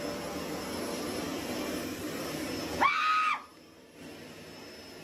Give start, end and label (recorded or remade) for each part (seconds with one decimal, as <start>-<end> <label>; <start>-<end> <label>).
0.0-1.3 recorded; 1.3-2.6 remade; 2.6-5.0 recorded